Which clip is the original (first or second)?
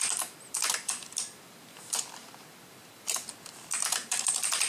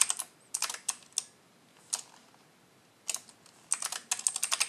second